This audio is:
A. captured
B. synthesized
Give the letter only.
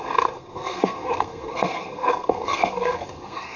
B